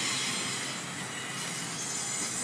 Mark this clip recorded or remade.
recorded